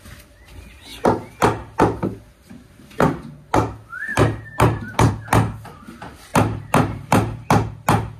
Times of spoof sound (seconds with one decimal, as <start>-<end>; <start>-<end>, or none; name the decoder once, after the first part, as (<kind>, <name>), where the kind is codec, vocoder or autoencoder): 4.1-5.1 (vocoder, BigVGAN v2); 6.3-7.5